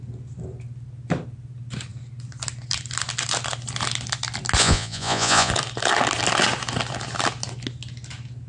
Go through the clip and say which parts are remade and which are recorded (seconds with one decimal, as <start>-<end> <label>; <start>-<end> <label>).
0.0-4.6 recorded; 4.6-5.5 remade; 5.5-8.5 recorded